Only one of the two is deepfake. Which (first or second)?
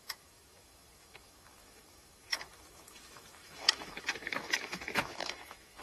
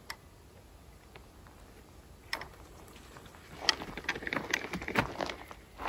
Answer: first